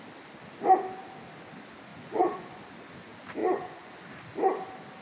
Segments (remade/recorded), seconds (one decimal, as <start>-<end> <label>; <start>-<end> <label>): 0.0-1.9 recorded; 1.9-2.6 remade; 2.6-3.4 recorded; 3.4-3.9 remade; 3.9-5.0 recorded